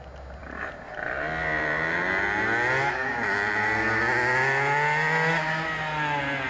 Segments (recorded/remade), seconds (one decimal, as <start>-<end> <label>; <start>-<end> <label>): 0.0-6.5 recorded